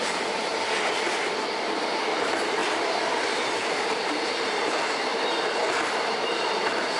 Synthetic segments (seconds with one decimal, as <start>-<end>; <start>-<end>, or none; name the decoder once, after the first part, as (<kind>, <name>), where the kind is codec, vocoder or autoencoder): 0.0-0.5 (vocoder, BigVGAN v2); 1.5-7.0